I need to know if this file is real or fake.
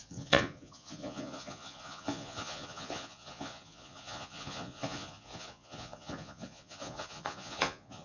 fake